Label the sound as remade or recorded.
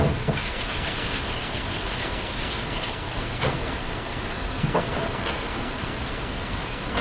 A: remade